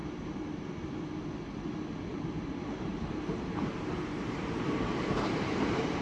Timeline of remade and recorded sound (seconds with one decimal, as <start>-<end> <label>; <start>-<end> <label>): 0.0-2.1 recorded; 2.1-6.0 remade